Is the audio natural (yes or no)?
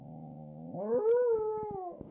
no